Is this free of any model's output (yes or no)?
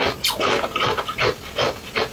yes